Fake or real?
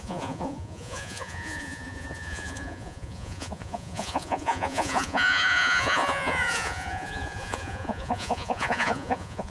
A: fake